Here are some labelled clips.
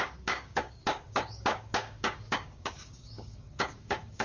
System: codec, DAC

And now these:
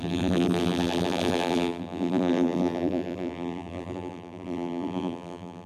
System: vocoder, BigVGAN v2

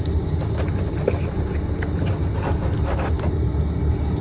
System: none